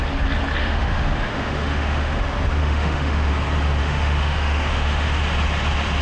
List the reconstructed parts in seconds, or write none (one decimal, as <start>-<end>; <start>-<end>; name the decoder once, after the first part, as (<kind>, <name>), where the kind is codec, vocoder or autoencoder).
0.6-2.2 (autoencoder, DAC-VAE); 2.6-3.3; 3.8-5.2